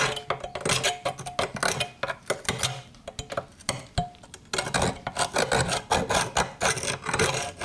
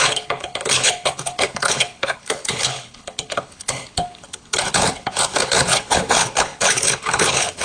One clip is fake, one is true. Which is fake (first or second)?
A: second